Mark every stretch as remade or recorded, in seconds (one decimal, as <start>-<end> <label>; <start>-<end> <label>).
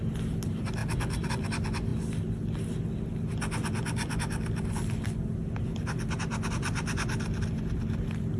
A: 0.0-8.4 recorded